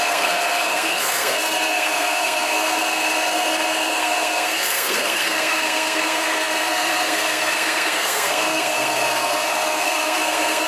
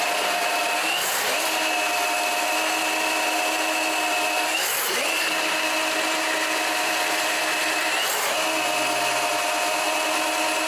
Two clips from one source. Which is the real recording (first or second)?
second